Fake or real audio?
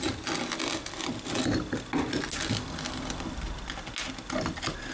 real